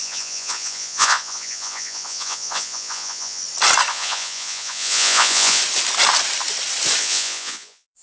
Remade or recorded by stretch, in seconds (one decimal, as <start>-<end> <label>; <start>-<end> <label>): 0.0-3.4 remade; 3.4-3.9 recorded; 3.9-5.6 remade; 5.6-7.0 recorded; 7.0-8.0 remade